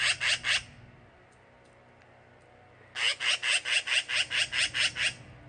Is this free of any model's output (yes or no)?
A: yes